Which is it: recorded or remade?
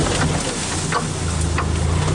recorded